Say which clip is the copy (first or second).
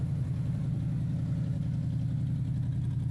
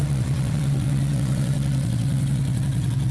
second